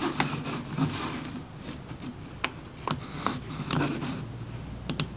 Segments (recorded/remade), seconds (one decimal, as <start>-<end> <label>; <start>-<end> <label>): 0.0-5.2 recorded